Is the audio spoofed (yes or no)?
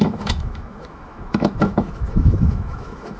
yes